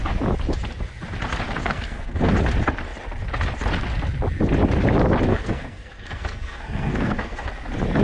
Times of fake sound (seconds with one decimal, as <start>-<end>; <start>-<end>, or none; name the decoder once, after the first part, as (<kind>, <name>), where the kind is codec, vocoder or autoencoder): 1.6-2.3 (codec, SNAC); 5.3-7.5